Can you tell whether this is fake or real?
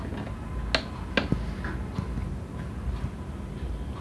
real